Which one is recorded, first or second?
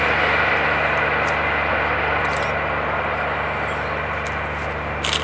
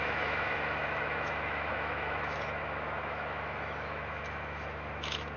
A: first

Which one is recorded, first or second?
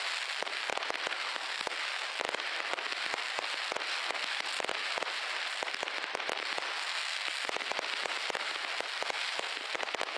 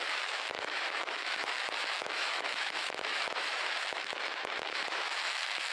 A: first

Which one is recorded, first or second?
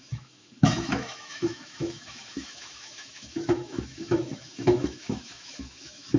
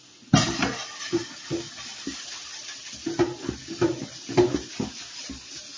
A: second